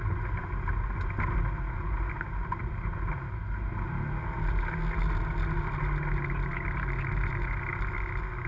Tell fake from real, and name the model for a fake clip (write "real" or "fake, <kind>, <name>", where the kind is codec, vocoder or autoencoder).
real